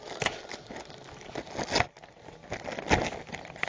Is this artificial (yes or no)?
no